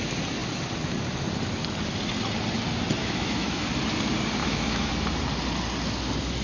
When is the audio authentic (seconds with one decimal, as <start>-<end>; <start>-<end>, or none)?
0.0-3.0; 3.7-4.4; 4.9-6.4